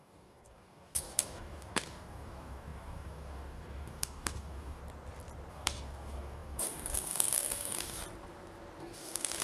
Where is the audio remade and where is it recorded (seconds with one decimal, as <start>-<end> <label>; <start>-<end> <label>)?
0.0-4.8 remade; 4.8-5.5 recorded; 5.5-8.0 remade; 8.0-8.8 recorded; 8.8-9.4 remade